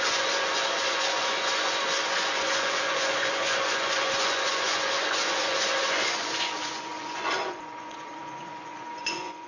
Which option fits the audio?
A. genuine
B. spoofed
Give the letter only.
B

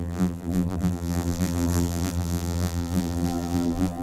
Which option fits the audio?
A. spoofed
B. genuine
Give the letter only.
A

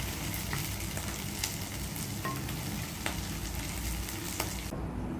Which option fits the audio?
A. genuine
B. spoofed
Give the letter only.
A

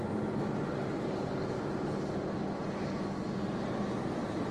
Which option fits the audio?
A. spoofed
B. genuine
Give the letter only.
B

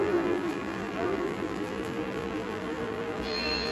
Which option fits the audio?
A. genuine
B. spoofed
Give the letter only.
B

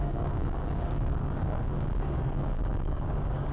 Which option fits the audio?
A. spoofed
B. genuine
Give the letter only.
A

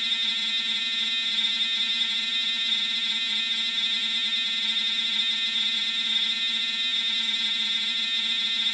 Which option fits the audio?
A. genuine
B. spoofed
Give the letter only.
B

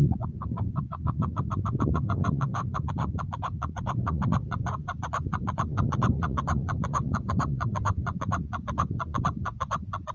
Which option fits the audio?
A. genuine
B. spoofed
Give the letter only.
B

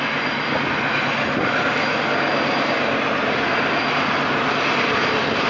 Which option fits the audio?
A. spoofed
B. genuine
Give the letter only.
B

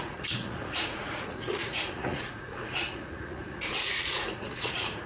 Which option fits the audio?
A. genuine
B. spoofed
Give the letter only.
B